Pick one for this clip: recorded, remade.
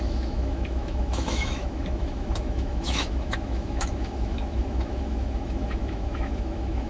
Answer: remade